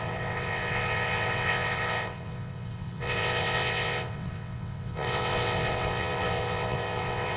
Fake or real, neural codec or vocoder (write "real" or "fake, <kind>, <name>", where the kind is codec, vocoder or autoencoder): fake, vocoder, WaveNeXt